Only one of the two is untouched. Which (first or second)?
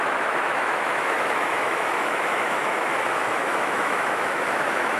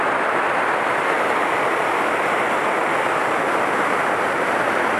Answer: second